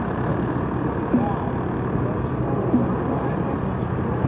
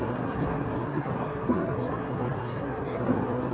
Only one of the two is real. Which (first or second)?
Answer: first